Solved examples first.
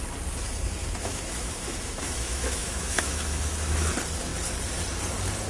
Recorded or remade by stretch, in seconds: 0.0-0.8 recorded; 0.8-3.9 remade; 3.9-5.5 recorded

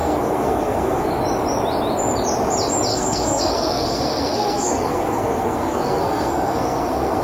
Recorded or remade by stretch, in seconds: 0.0-1.2 remade; 1.2-2.9 recorded; 2.9-7.2 remade

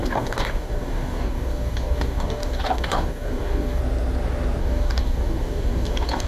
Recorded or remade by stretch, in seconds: 0.0-3.8 remade; 3.8-4.6 recorded; 4.6-6.3 remade

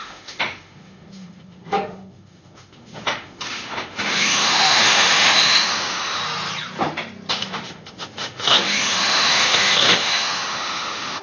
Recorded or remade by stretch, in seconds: 0.0-6.2 remade; 6.2-7.3 recorded; 7.3-11.2 remade

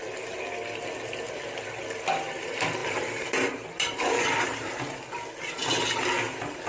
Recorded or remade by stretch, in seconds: 0.0-2.8 recorded; 2.8-5.3 remade; 5.3-6.7 recorded